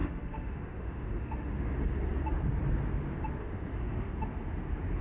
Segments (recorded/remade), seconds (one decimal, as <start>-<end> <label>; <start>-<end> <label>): 0.0-1.9 remade; 1.9-3.4 recorded; 3.4-4.1 remade; 4.1-5.0 recorded